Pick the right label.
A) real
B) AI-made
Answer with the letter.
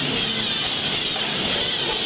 A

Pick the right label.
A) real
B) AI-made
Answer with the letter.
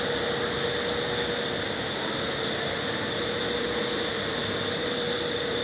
A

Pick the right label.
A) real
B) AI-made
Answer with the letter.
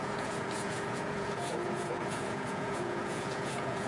B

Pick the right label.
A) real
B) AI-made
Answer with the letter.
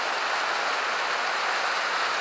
A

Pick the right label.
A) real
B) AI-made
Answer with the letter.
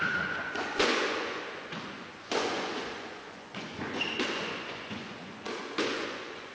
B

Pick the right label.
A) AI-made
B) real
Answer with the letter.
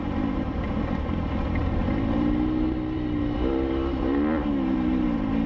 B